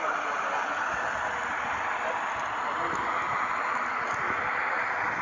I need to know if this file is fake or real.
real